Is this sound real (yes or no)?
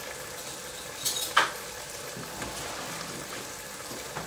yes